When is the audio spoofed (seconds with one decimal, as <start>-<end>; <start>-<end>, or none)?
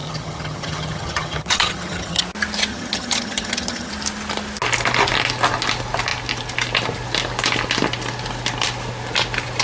0.0-2.2; 2.7-3.9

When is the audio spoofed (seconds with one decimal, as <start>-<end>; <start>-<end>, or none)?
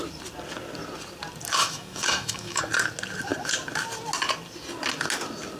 1.6-2.6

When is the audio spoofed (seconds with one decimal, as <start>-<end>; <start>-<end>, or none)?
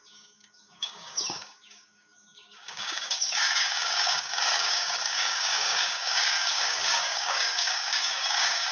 0.0-8.7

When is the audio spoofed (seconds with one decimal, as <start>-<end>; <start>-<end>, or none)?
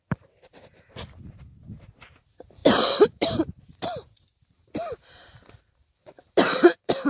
0.0-7.1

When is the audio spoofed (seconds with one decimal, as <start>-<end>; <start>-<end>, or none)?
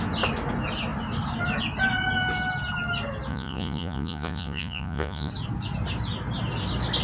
3.3-5.3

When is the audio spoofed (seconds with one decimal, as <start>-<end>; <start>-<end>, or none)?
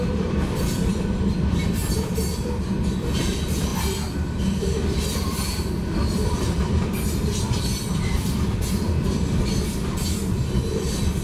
0.0-1.8; 2.4-11.2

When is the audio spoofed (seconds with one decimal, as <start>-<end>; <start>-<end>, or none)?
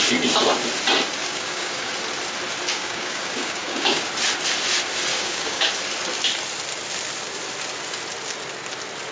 1.2-1.9; 2.7-4.1; 5.1-5.7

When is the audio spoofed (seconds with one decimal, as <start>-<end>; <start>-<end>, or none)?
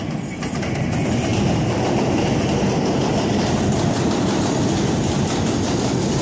none